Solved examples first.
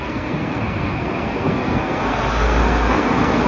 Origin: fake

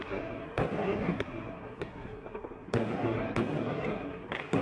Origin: fake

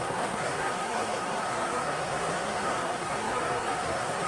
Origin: fake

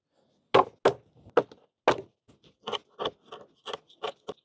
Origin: real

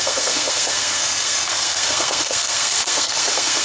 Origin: fake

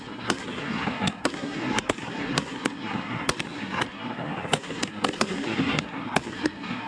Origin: fake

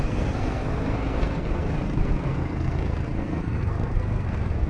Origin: fake